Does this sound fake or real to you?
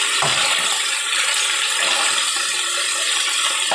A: fake